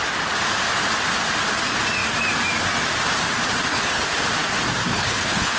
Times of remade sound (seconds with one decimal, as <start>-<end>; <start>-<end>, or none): 3.7-4.2; 4.8-5.6